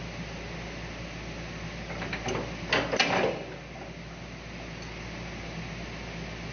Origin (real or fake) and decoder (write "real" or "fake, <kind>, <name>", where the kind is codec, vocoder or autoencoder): real